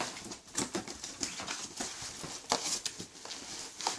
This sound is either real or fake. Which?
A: real